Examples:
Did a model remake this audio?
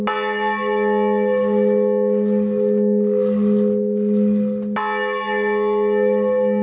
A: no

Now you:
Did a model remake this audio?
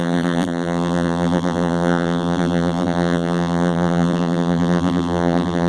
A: yes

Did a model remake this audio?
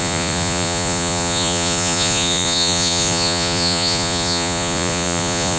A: yes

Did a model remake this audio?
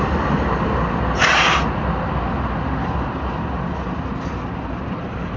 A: no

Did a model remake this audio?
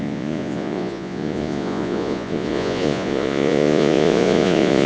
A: yes